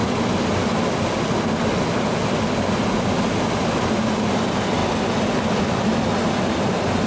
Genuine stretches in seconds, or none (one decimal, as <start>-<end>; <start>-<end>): 0.0-7.1